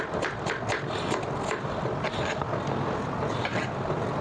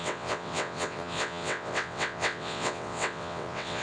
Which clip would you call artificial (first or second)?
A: second